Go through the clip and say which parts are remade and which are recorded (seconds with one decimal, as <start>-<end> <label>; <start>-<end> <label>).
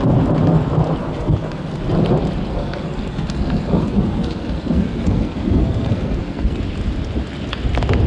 0.0-1.0 recorded; 1.0-1.8 remade; 1.8-2.5 recorded; 2.5-6.6 remade; 6.6-8.1 recorded